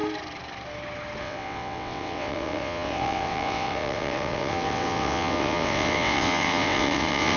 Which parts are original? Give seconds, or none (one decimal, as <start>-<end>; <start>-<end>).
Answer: 0.0-1.2